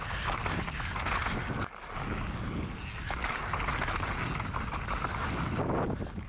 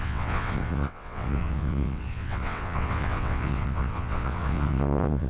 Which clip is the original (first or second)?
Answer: first